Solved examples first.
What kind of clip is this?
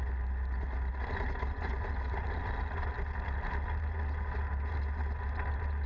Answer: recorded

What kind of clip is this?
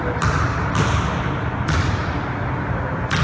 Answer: recorded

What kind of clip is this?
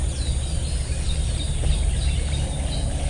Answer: recorded